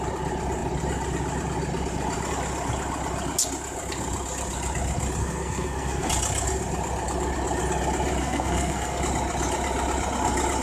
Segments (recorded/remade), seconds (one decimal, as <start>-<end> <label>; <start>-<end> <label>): 0.0-5.2 recorded; 5.2-6.1 remade; 6.1-8.2 recorded; 8.2-9.0 remade; 9.0-10.6 recorded